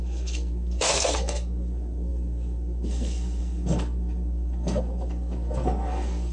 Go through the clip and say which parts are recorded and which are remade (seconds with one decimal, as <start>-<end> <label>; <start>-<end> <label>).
0.0-6.3 remade